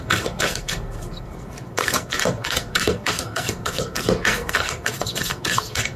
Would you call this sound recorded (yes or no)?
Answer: no